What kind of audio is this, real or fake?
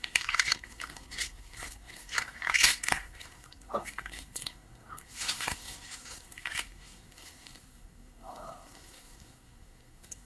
fake